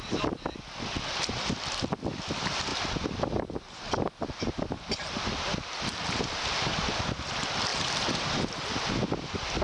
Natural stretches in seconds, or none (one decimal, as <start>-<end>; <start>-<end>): 0.0-7.7; 8.5-9.6